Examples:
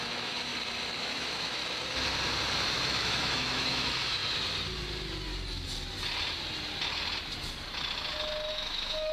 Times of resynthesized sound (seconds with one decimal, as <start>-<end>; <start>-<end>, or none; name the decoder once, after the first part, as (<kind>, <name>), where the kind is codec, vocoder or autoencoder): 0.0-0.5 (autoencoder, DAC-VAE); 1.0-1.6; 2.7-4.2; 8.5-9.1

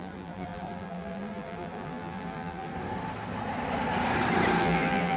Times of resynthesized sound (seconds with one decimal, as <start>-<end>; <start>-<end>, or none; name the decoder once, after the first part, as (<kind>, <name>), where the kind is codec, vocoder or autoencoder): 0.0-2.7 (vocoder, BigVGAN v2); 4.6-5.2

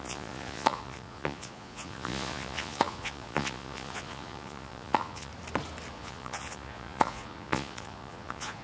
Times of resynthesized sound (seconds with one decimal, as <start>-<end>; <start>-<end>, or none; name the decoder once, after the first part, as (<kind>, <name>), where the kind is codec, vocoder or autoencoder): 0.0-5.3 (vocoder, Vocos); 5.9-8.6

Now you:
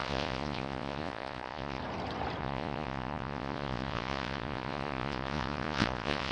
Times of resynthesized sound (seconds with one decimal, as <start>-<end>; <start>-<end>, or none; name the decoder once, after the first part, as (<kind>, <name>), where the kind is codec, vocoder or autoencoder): 0.0-1.8 (vocoder, Vocos); 2.4-6.3